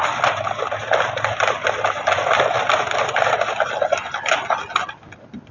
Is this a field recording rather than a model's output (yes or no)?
yes